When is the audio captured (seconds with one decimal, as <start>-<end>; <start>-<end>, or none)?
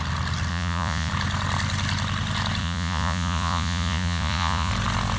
0.0-0.5; 1.1-2.6; 4.7-5.2